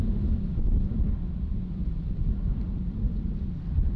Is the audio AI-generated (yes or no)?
no